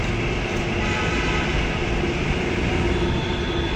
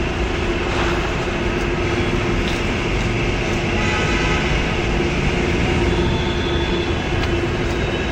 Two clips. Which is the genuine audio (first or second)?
second